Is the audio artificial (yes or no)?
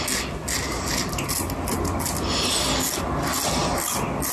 no